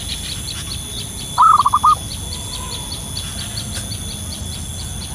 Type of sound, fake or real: real